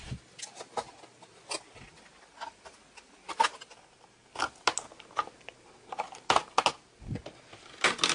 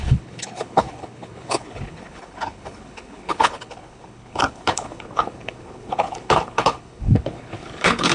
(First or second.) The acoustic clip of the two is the first